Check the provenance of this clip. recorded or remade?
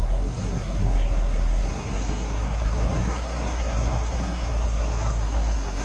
remade